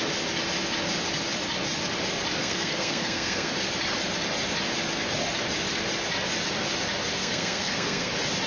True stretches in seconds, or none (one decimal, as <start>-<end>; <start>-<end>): 0.0-2.4; 3.5-7.2; 8.1-8.5